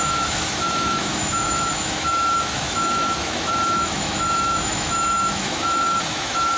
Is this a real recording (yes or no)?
no